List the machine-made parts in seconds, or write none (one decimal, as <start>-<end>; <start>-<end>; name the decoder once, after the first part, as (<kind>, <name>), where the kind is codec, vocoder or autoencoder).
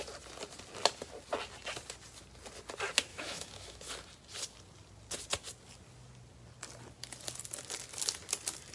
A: 3.1-3.9 (autoencoder, DAC-VAE)